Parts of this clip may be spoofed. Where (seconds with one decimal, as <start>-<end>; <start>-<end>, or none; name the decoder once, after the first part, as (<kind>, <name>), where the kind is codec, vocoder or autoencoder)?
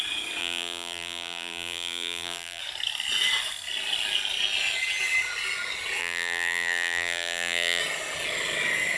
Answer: 0.4-2.6 (vocoder, BigVGAN v2); 6.0-7.8